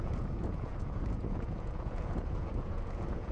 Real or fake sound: fake